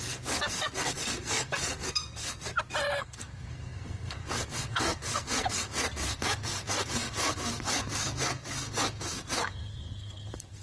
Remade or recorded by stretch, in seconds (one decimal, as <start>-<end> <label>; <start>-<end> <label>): 0.0-2.5 remade; 2.5-3.0 recorded; 3.0-10.6 remade